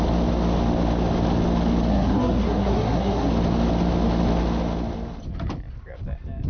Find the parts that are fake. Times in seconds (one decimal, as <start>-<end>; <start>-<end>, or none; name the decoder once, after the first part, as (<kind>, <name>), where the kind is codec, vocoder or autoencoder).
1.9-3.3 (codec, SNAC)